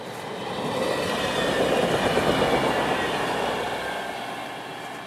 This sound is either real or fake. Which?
real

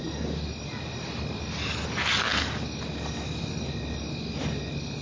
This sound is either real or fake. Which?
real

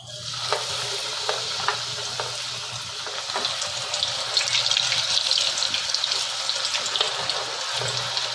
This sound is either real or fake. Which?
real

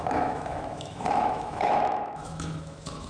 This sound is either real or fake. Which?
fake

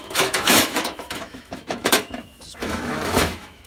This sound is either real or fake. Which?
fake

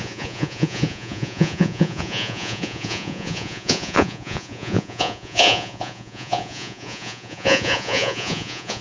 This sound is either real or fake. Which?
fake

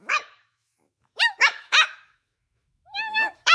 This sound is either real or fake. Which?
fake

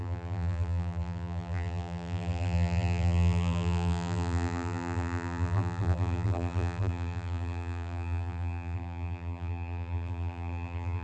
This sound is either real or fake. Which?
fake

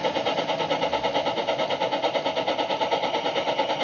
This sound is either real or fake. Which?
real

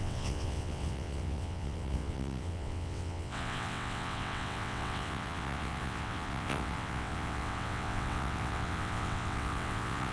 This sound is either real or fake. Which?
fake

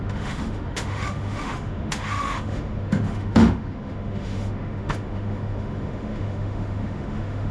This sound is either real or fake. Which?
fake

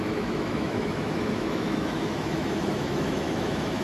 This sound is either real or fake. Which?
fake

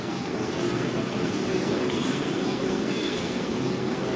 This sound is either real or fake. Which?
fake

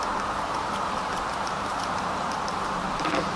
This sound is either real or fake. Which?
fake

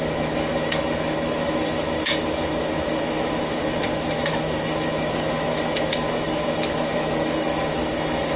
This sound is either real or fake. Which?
fake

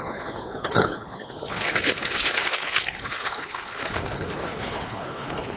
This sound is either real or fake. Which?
fake